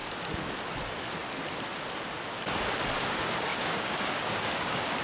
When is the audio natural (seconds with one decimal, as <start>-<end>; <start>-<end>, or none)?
0.0-3.0